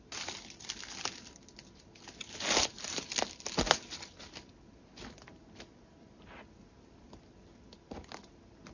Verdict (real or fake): real